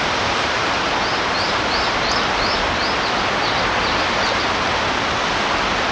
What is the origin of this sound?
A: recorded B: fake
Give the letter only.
A